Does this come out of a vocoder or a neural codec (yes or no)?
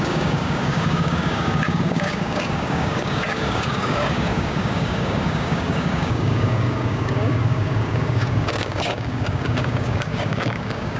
yes